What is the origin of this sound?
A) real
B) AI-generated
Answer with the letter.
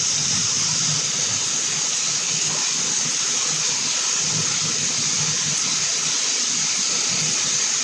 A